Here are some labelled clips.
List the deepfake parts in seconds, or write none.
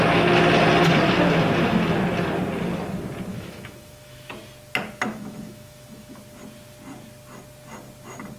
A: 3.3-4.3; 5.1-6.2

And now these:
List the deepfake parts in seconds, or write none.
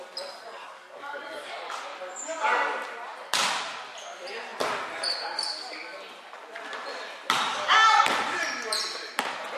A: 0.6-1.5; 7.5-8.0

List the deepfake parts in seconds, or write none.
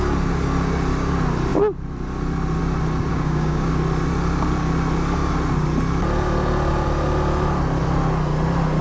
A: 3.1-3.7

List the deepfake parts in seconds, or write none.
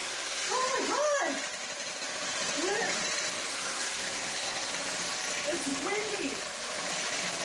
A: 0.0-0.5; 3.5-4.7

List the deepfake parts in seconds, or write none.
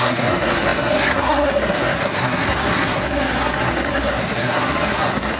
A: 0.0-5.4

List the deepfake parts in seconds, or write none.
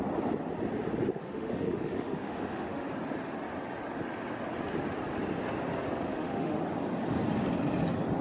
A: 1.1-2.9; 6.1-6.6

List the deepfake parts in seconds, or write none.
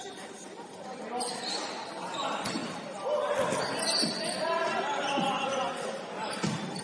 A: none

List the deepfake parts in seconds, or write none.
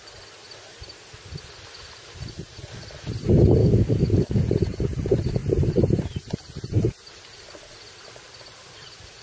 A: 3.6-4.4